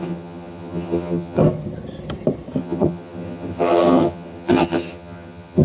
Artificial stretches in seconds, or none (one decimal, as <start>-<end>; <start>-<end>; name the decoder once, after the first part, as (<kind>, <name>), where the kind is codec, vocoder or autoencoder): 0.0-1.4 (vocoder, HiFi-GAN); 2.6-5.6